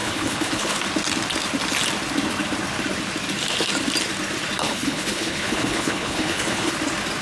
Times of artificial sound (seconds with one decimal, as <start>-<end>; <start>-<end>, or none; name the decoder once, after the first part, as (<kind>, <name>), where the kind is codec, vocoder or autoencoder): 0.0-0.8 (codec, HILCodec); 4.6-6.7